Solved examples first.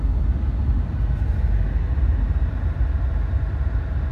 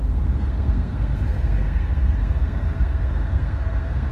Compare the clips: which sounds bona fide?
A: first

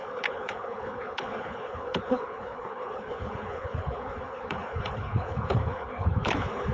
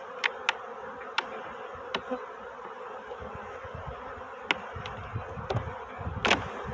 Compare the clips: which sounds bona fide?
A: second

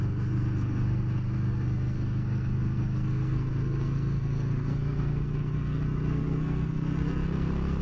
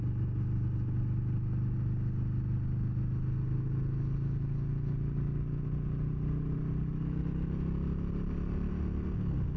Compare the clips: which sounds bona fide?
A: second